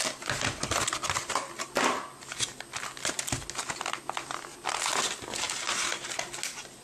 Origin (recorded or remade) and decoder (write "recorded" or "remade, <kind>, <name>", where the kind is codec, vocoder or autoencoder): recorded